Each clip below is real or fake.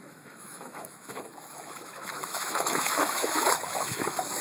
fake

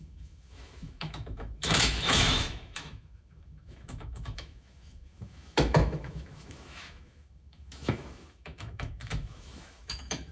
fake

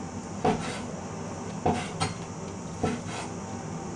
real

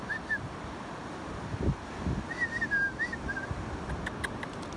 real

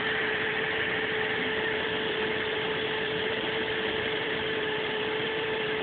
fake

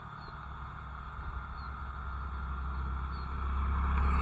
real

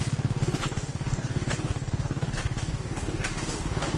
fake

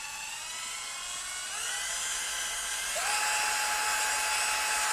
real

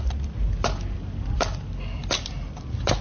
real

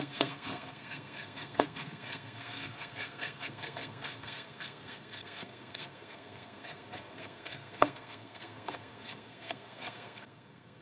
fake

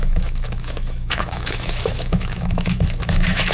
fake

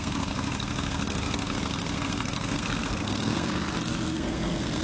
fake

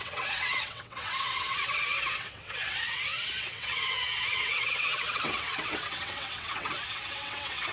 fake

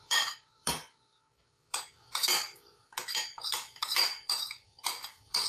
fake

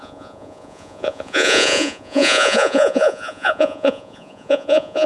fake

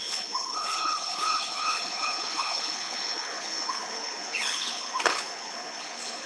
fake